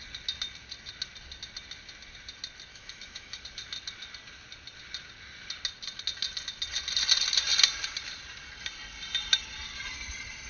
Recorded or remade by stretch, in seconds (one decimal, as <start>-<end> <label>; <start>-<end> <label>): 0.0-2.7 recorded; 2.7-3.4 remade; 3.4-10.5 recorded